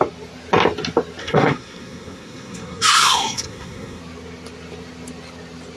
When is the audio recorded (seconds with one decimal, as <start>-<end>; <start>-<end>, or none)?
0.0-1.2; 4.0-5.8